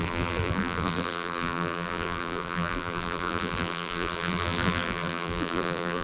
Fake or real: fake